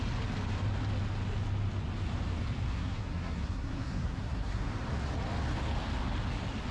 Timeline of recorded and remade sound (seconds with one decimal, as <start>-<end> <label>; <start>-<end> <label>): 0.0-2.7 recorded; 2.7-4.6 remade; 4.6-6.7 recorded